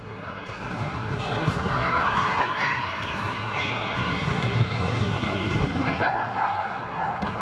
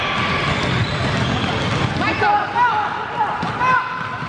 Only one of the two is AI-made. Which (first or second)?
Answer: first